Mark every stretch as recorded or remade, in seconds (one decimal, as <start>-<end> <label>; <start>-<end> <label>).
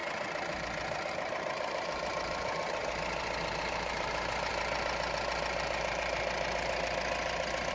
0.0-1.1 recorded; 1.1-2.8 remade; 2.8-3.6 recorded; 3.6-4.5 remade; 4.5-7.7 recorded